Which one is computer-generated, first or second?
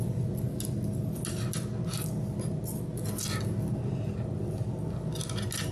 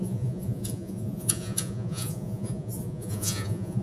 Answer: second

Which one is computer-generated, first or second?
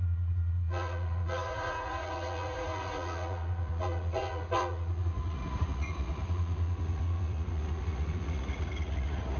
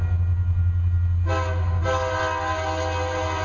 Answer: first